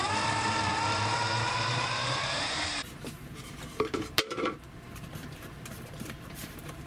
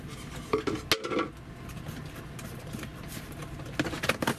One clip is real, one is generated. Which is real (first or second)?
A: second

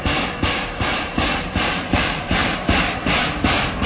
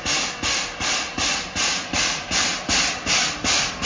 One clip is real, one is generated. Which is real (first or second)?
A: second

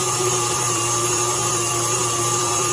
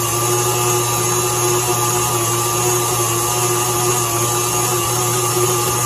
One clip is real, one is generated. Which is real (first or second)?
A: second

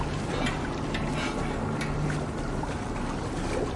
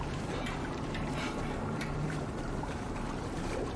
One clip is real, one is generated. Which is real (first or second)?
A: first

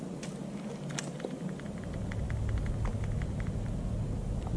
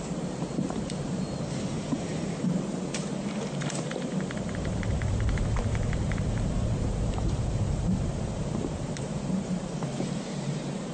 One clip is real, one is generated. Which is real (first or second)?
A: first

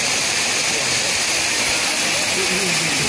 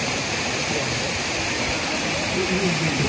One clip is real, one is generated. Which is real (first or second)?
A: first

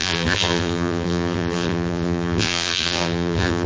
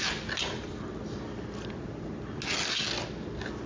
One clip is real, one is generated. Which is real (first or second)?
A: second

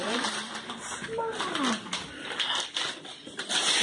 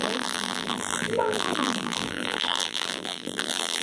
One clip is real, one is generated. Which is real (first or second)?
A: first